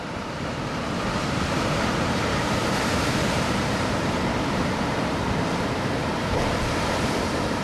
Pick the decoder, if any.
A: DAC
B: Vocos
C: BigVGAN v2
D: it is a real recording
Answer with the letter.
C